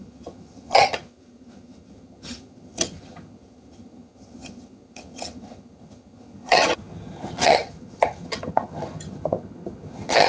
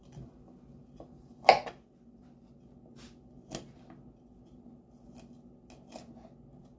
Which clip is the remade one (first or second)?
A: first